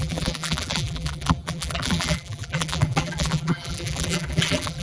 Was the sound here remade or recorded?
remade